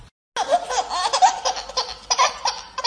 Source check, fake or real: real